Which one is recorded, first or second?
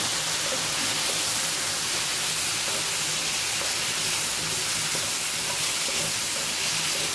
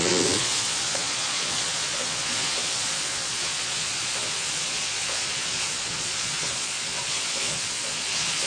first